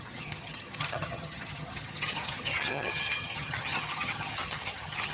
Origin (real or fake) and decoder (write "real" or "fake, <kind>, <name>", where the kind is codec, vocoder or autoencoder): fake, vocoder, HiFi-GAN